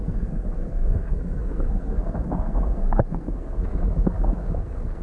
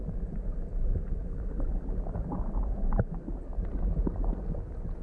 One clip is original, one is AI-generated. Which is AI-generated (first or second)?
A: first